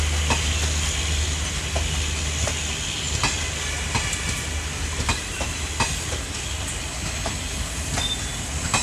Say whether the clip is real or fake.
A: real